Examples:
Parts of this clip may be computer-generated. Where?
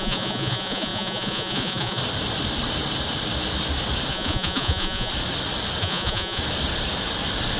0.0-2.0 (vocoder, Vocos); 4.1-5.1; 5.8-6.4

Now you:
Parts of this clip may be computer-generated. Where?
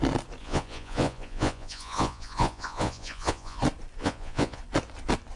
0.4-3.6 (vocoder, Vocos); 4.0-4.6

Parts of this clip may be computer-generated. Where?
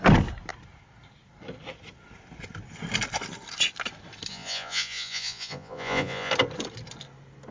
4.3-6.3 (vocoder, Vocos)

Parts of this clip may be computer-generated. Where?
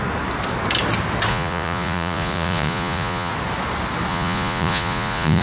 1.3-3.3 (vocoder, Vocos); 4.1-5.4